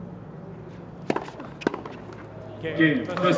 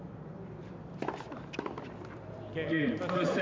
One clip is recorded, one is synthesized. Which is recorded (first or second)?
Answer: first